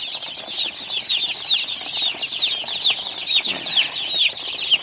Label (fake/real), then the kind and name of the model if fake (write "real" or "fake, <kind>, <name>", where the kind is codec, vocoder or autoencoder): real